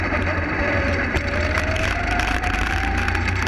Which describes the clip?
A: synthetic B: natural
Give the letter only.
A